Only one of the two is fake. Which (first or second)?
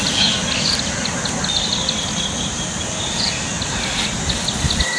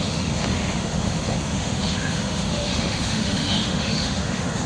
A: second